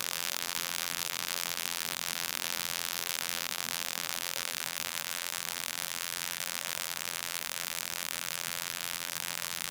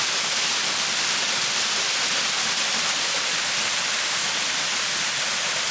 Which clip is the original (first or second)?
second